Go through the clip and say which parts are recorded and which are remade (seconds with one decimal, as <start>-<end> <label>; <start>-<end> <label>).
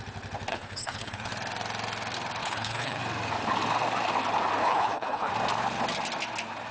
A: 0.0-0.5 recorded; 0.5-1.3 remade; 1.3-2.4 recorded; 2.4-3.0 remade; 3.0-4.6 recorded; 4.6-5.3 remade; 5.3-6.7 recorded